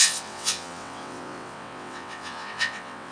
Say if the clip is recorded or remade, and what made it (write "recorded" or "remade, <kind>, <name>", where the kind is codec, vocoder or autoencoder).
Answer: remade, vocoder, WaveNeXt